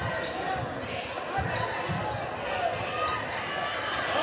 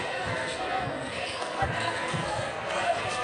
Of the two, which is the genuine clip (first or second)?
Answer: first